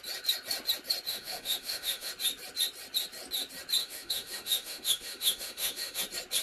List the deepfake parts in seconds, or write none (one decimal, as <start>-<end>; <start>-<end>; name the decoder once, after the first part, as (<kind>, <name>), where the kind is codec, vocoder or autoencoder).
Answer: 1.1-2.1 (autoencoder, DAC-VAE); 3.8-6.0